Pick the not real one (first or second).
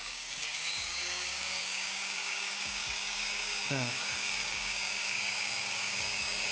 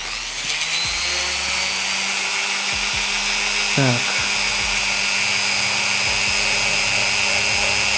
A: first